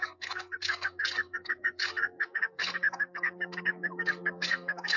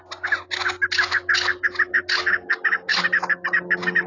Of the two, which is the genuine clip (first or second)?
second